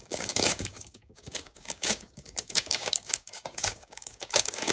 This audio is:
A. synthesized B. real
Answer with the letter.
A